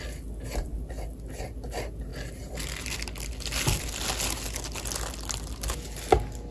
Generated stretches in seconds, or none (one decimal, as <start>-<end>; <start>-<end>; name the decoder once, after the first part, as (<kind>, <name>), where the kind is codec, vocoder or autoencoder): none